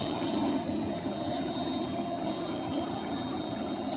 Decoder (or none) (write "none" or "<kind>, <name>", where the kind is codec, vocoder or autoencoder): vocoder, HiFi-GAN